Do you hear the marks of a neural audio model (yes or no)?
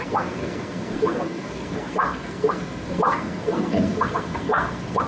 yes